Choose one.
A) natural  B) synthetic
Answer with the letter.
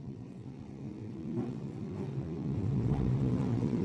B